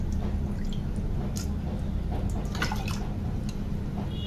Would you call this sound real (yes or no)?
yes